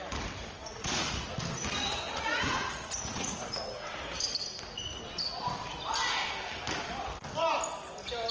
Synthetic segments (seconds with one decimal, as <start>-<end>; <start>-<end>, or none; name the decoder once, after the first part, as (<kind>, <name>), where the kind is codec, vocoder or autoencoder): 0.6-1.2 (vocoder, Vocos); 1.8-4.2